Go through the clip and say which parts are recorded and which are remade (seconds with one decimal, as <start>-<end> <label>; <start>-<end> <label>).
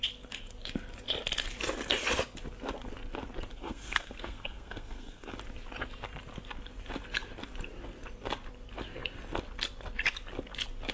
0.0-3.5 recorded; 3.5-5.3 remade; 5.3-10.9 recorded